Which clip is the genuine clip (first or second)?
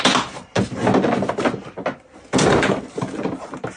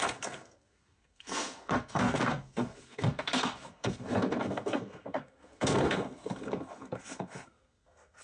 first